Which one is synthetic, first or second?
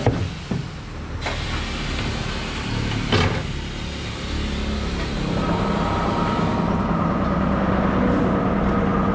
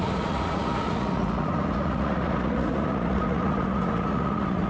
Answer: second